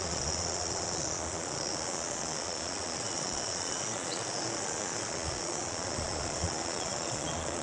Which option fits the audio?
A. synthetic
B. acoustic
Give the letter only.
A